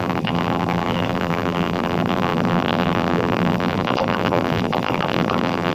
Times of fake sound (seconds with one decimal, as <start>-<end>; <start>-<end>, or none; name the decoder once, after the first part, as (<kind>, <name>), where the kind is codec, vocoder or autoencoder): 0.0-5.7 (vocoder, BigVGAN v2)